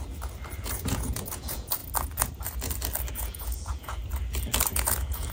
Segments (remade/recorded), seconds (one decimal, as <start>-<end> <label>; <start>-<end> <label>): 0.0-0.6 recorded; 0.6-1.8 remade; 1.8-3.1 recorded; 3.1-4.0 remade; 4.0-4.7 recorded; 4.7-5.3 remade